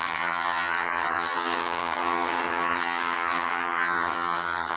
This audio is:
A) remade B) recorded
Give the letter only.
A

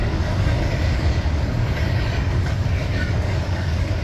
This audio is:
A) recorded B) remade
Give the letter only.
B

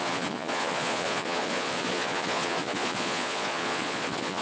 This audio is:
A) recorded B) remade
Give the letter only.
B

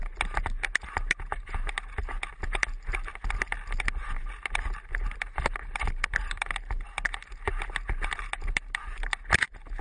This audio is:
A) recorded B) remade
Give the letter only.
A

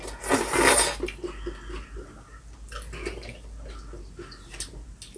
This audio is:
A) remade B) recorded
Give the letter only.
B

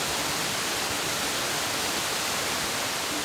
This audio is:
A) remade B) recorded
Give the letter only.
A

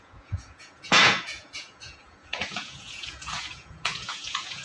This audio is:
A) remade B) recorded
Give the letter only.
A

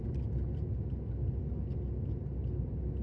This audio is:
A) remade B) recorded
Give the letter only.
B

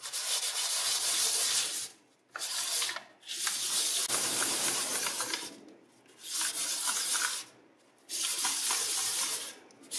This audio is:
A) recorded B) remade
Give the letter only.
A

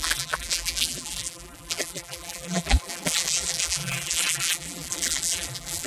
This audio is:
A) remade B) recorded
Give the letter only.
A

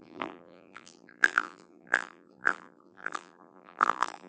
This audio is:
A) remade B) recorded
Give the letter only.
A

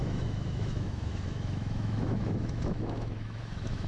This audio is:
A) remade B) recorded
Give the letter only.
A